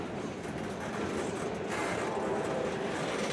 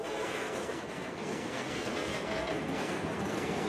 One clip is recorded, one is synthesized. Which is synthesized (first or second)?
second